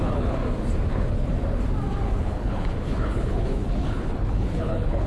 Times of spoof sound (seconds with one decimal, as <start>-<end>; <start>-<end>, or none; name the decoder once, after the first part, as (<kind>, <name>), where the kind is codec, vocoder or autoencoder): 0.0-0.4 (codec, HILCodec); 0.9-1.3; 2.2-5.1